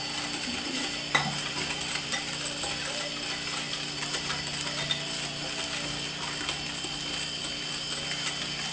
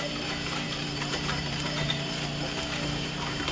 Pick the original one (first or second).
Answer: first